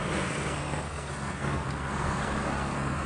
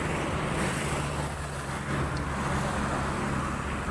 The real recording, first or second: second